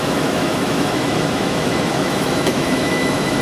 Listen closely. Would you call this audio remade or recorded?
remade